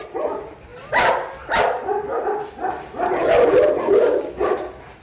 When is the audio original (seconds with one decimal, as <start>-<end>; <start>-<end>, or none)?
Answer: 0.0-4.0; 4.5-5.0

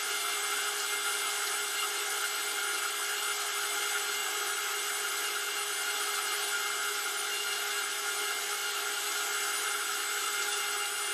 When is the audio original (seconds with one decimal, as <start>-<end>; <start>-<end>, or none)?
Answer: 0.0-11.1

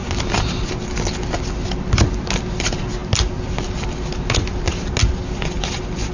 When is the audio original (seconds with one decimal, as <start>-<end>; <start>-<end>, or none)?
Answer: 0.0-6.1

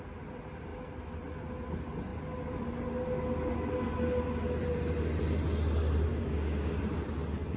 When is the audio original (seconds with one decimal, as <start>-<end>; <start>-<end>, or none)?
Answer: 0.0-6.1; 6.8-7.6

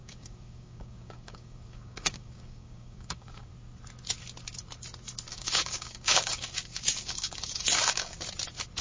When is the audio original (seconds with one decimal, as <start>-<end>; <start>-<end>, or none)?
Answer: 3.5-5.3; 8.2-8.8

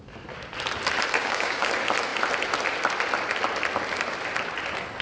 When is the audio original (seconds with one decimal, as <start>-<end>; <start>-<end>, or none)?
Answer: 0.0-1.2; 1.7-5.0